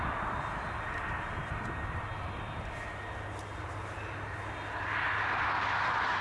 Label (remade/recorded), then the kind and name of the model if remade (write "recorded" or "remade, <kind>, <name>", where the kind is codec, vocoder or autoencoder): recorded